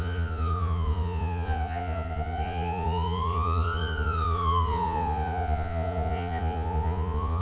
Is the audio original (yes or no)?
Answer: no